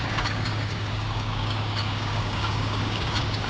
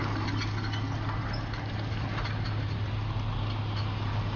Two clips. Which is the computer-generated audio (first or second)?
first